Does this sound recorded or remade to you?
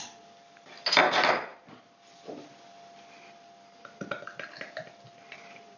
recorded